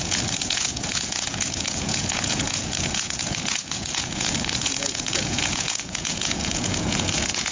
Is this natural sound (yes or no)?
no